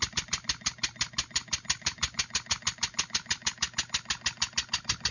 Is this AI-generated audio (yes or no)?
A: no